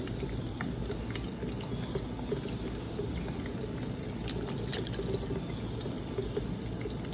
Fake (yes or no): no